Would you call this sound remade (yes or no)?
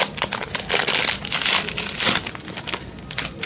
no